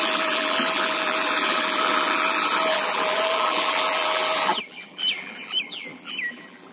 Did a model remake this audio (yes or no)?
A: yes